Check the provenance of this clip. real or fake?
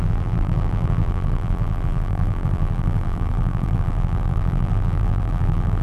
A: fake